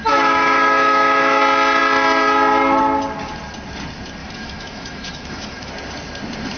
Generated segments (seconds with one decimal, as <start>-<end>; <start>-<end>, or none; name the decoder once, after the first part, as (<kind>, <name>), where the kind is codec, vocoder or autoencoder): 0.0-1.4 (autoencoder, DAC-VAE); 4.2-5.7